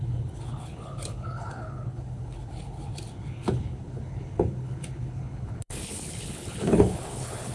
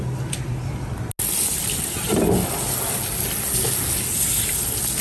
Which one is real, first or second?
second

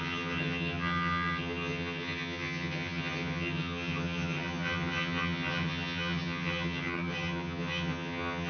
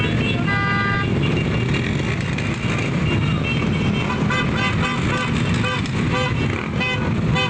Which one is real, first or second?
second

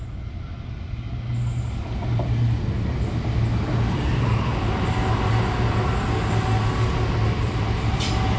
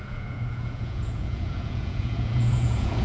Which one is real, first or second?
first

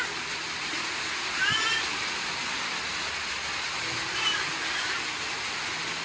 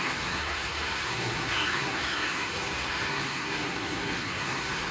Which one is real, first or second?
first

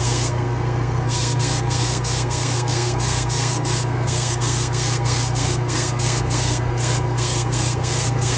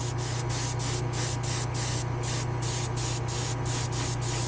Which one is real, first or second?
second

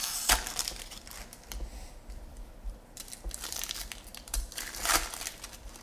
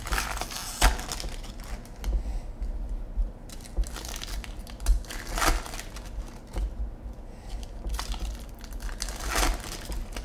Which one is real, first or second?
second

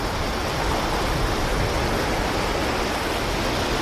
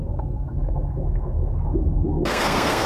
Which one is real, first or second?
first